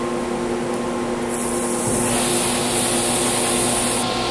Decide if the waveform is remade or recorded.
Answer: recorded